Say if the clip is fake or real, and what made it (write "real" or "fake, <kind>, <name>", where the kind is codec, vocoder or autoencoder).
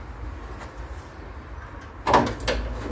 real